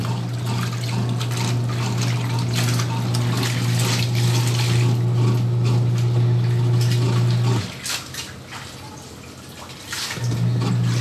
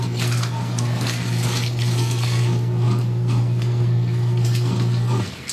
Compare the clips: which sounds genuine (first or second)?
first